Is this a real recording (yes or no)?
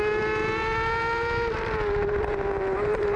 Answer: no